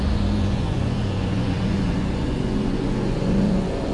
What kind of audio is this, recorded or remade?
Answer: remade